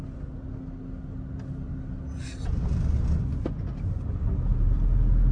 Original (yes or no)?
yes